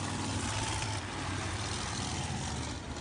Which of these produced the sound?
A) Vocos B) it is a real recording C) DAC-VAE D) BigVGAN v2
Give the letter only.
B